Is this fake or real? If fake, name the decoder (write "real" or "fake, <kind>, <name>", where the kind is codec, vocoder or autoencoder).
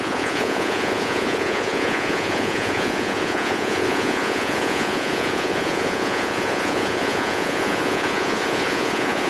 fake, vocoder, Vocos